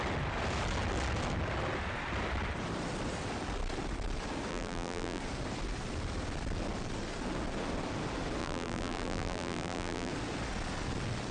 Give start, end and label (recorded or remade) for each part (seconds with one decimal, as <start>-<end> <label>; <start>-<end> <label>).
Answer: 0.0-4.5 recorded; 4.5-5.2 remade; 5.2-8.4 recorded; 8.4-10.1 remade; 10.1-11.3 recorded